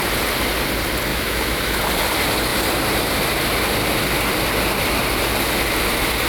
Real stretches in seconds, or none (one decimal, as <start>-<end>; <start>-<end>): 0.0-1.1; 1.8-6.3